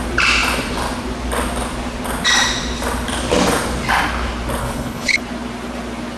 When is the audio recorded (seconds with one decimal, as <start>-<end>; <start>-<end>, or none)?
0.0-4.6; 5.2-6.2